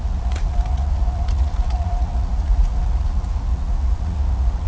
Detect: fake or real fake